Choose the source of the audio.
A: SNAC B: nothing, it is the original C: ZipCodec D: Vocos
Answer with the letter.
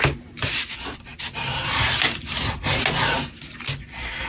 B